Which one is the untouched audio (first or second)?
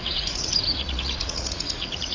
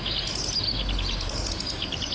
second